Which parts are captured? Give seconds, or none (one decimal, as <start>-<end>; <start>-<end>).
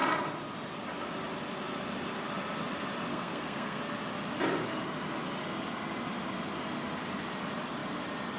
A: 0.0-3.1; 3.8-8.4